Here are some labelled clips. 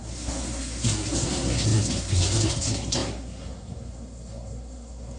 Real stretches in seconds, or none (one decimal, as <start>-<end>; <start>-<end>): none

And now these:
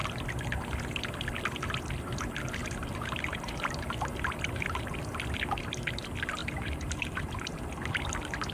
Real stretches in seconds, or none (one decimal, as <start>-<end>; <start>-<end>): 0.0-2.6; 4.9-6.4; 7.6-8.5

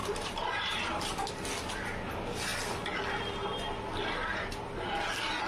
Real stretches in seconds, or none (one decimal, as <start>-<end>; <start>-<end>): 1.3-4.3; 4.9-5.5